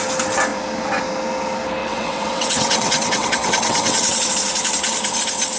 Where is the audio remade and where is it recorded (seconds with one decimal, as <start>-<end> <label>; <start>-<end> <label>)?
0.0-1.8 recorded; 1.8-4.3 remade; 4.3-5.6 recorded